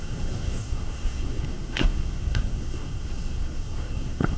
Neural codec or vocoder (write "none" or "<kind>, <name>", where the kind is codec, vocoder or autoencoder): codec, SNAC